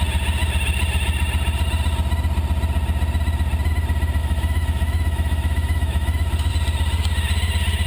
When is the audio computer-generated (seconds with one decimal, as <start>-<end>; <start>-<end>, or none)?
4.2-6.5